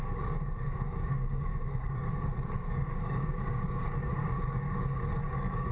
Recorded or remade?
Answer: remade